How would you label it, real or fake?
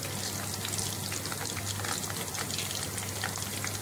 real